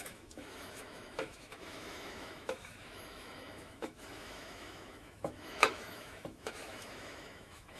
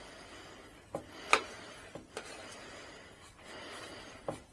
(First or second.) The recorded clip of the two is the second